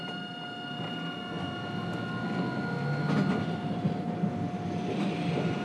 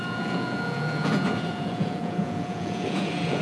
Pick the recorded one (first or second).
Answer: first